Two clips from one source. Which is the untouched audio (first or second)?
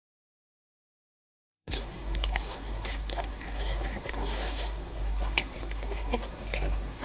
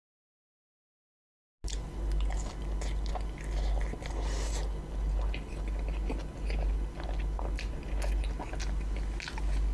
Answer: second